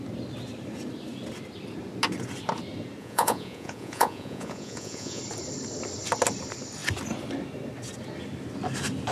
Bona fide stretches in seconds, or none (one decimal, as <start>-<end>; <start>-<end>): 0.0-3.0; 5.2-9.1

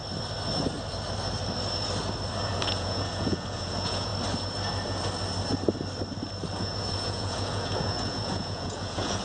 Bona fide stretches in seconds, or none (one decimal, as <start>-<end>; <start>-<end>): 0.0-2.5; 4.1-6.6

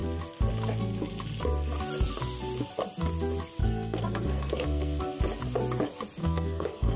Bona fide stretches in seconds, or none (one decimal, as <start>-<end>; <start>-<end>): 0.0-3.6; 5.0-6.2

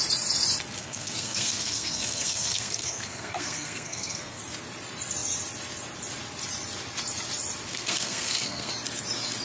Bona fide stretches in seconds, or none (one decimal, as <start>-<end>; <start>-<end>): 0.0-0.8; 4.4-7.7; 8.7-9.4